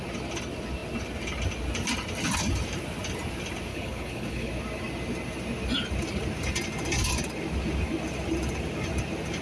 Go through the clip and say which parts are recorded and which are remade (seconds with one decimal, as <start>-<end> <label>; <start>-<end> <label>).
0.0-3.7 recorded; 3.7-4.5 remade; 4.5-9.4 recorded